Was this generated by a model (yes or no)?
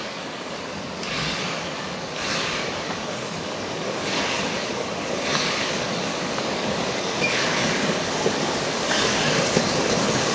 yes